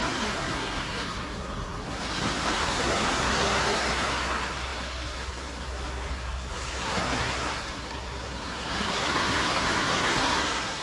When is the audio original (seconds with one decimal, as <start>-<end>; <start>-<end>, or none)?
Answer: none